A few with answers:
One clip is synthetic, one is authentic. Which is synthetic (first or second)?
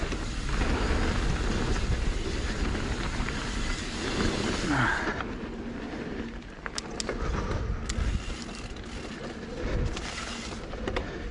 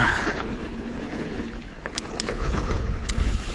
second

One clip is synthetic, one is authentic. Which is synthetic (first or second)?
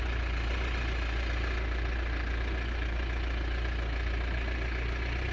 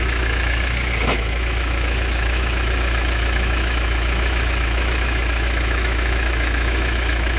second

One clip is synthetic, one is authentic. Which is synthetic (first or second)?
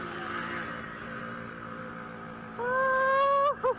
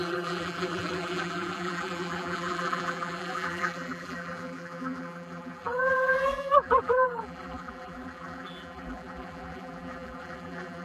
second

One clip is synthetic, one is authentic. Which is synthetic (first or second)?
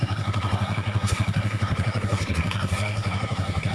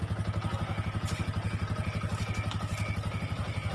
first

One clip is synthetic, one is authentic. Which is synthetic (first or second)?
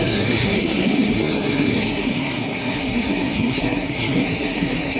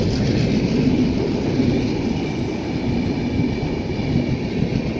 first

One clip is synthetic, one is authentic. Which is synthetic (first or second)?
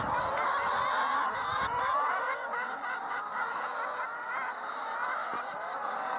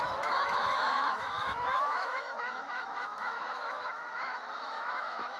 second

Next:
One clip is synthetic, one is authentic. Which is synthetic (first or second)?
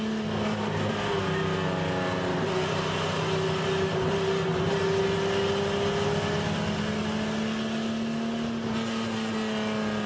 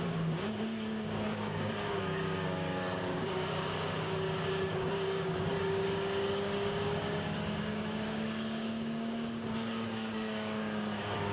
second